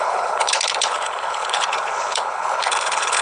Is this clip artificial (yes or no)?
yes